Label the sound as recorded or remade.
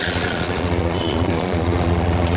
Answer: remade